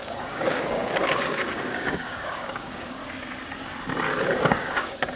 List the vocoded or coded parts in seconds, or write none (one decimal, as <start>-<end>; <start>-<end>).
0.0-3.0; 4.4-5.2